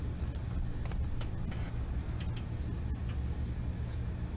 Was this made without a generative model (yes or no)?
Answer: yes